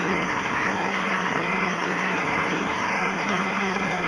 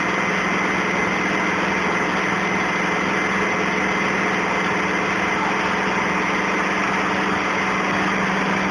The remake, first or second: first